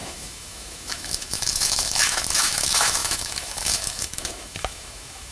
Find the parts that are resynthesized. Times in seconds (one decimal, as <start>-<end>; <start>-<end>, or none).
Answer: 0.0-5.3